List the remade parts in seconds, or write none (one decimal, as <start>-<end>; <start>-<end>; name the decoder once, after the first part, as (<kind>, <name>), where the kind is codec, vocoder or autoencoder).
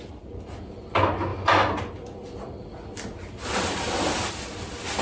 none